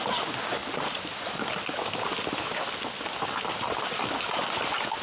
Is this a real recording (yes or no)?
yes